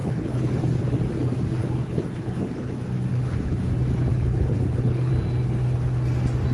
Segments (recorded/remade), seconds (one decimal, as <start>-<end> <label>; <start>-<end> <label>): 0.0-0.6 remade; 0.6-1.6 recorded; 1.6-2.7 remade; 2.7-3.1 recorded; 3.1-3.6 remade; 3.6-4.1 recorded; 4.1-5.1 remade; 5.1-6.5 recorded